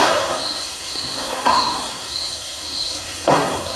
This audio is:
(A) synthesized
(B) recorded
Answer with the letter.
A